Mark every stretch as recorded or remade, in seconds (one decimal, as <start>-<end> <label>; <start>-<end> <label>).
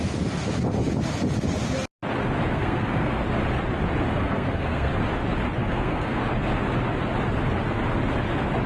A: 0.0-2.5 recorded; 2.5-3.2 remade; 3.2-4.1 recorded; 4.1-4.9 remade; 4.9-5.6 recorded; 5.6-6.2 remade; 6.2-8.7 recorded